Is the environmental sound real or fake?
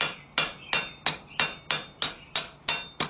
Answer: real